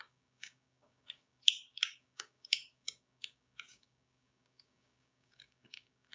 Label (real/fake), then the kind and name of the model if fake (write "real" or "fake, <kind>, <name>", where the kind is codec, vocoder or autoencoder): fake, codec, DAC